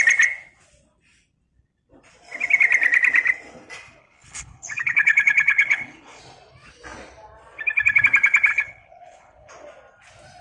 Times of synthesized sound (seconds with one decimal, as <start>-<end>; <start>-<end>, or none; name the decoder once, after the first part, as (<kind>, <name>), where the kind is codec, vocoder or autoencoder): 4.0-6.2 (codec, HILCodec); 8.5-9.5